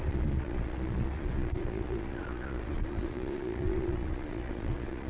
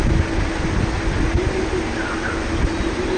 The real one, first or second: second